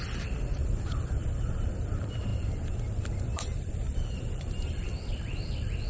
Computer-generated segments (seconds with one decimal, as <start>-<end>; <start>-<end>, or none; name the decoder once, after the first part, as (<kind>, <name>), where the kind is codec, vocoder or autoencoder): 0.0-4.9 (vocoder, BigVGAN v2)